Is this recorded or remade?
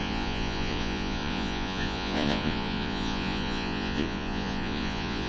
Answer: remade